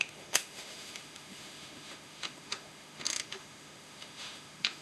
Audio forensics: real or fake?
fake